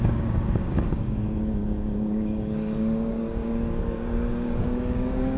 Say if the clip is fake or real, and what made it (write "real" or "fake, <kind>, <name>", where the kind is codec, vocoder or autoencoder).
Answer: fake, codec, DAC